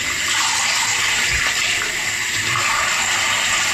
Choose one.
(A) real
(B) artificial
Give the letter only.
A